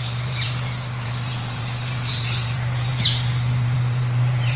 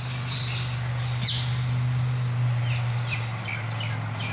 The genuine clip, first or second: second